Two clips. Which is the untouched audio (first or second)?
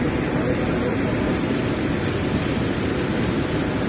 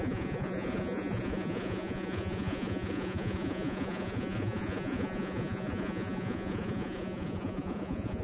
first